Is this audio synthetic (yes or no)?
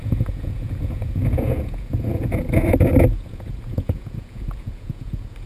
yes